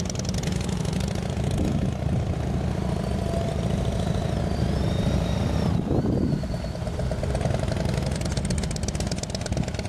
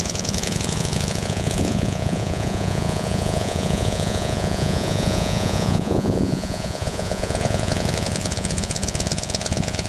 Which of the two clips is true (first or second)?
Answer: first